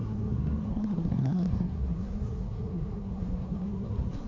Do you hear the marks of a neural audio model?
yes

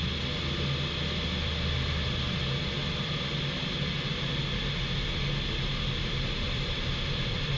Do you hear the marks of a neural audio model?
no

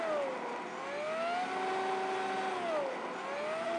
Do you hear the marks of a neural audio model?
no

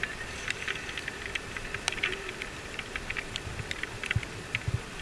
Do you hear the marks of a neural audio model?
no